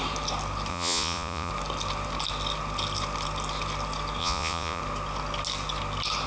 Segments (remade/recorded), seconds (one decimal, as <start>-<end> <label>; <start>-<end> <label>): 0.0-0.7 recorded; 0.7-1.5 remade; 1.5-4.2 recorded; 4.2-4.8 remade; 4.8-6.3 recorded